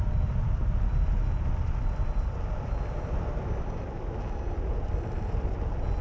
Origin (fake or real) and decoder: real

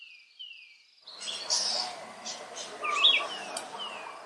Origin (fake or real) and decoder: real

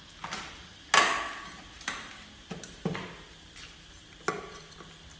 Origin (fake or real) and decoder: real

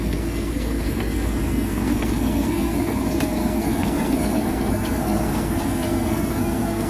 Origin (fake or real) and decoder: fake, codec, SNAC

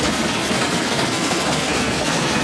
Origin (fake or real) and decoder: fake, codec, SNAC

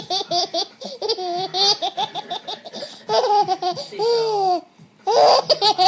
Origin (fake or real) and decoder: real